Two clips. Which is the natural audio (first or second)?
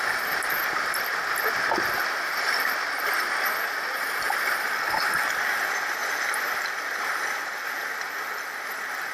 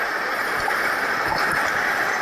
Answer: first